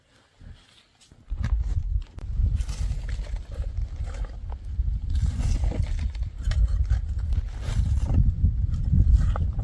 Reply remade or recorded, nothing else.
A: recorded